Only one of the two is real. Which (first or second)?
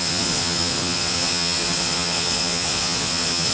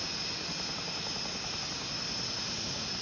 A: second